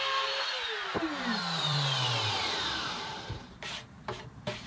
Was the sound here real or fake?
fake